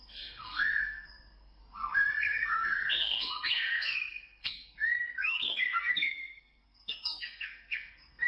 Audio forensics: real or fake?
fake